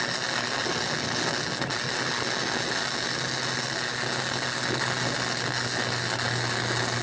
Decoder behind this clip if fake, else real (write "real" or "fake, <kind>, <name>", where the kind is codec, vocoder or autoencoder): real